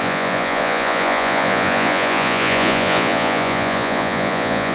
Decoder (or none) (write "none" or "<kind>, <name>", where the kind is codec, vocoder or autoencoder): vocoder, Vocos